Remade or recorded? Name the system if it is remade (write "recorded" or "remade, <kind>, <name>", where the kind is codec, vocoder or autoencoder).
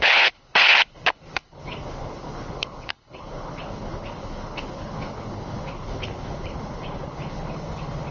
remade, codec, HILCodec